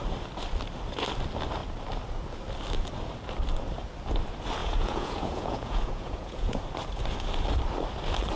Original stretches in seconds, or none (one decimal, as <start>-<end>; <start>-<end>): 0.0-4.6; 6.6-8.4